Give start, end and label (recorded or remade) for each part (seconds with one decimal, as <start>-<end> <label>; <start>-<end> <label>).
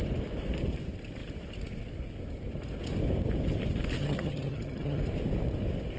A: 0.0-4.0 recorded; 4.0-5.0 remade; 5.0-6.0 recorded